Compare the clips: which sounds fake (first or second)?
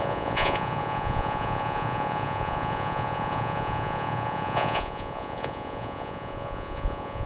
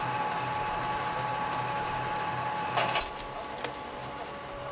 first